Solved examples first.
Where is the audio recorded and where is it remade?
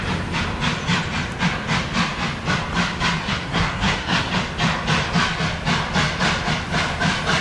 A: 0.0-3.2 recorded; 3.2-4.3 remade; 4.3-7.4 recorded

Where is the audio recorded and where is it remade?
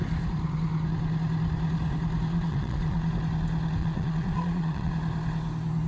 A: 0.0-2.3 recorded; 2.3-3.1 remade; 3.1-3.8 recorded; 3.8-4.9 remade; 4.9-5.9 recorded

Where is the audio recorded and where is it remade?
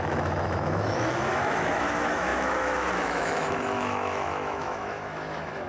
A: 0.0-5.7 remade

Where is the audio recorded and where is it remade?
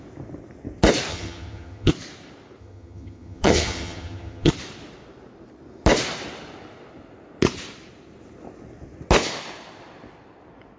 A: 0.0-1.1 recorded; 1.1-1.9 remade; 1.9-2.6 recorded; 2.6-4.5 remade; 4.5-10.8 recorded